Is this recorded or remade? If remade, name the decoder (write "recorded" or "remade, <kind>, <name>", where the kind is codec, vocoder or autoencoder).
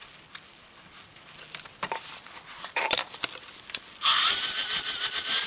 recorded